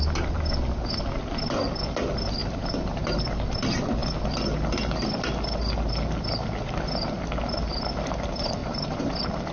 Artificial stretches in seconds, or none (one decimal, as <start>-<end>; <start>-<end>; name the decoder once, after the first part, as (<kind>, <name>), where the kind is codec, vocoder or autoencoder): 2.4-3.2 (vocoder, BigVGAN v2); 8.6-9.1